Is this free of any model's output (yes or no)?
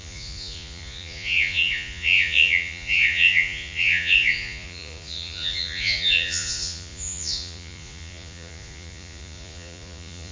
no